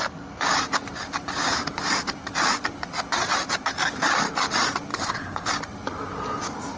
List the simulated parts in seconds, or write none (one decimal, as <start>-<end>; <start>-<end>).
4.9-5.5